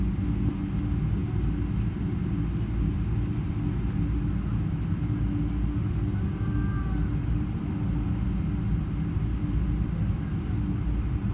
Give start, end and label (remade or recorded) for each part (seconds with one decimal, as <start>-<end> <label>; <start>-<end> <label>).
0.0-11.3 recorded

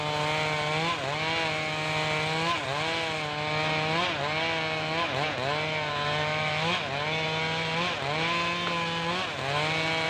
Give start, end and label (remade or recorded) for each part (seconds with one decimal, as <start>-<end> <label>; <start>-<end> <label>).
0.0-6.2 recorded; 6.2-6.8 remade; 6.8-10.1 recorded

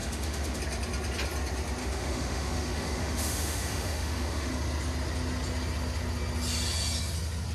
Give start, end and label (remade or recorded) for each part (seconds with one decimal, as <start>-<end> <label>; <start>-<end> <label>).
0.0-0.6 remade; 0.6-1.8 recorded; 1.8-4.5 remade; 4.5-7.5 recorded

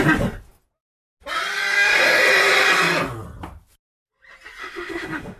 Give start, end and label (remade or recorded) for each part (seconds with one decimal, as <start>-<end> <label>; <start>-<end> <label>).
0.0-4.6 recorded; 4.6-5.4 remade

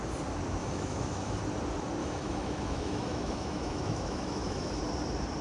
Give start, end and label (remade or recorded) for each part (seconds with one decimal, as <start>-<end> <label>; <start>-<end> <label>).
0.0-0.6 recorded; 0.6-1.4 remade; 1.4-2.0 recorded; 2.0-4.8 remade; 4.8-5.4 recorded

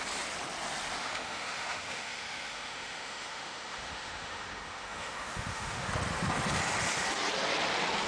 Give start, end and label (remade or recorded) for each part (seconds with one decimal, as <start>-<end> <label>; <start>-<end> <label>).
0.0-1.0 recorded; 1.0-5.9 remade; 5.9-8.1 recorded

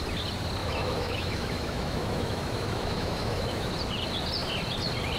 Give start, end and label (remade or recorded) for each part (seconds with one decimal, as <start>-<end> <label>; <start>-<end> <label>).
0.0-0.6 recorded; 0.6-3.7 remade; 3.7-5.2 recorded